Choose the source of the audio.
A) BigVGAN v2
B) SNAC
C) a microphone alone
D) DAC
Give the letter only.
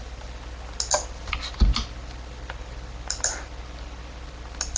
C